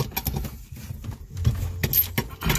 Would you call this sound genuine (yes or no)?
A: yes